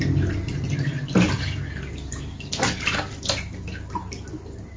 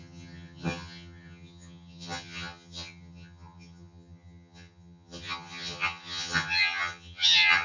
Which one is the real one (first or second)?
first